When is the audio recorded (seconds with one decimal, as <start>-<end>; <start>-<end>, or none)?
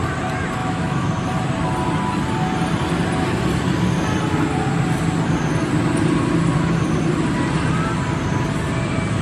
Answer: 0.0-0.6; 1.1-9.2